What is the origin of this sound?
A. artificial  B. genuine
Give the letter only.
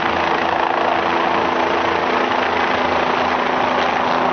B